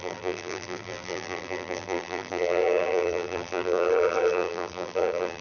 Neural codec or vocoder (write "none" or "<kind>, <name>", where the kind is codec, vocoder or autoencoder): vocoder, BigVGAN v2